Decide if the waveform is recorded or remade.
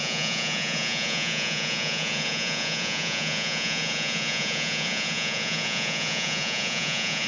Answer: remade